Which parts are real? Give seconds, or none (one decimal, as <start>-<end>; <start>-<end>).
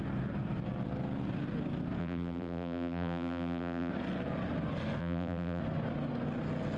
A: 0.0-2.0; 3.9-5.0; 5.6-6.8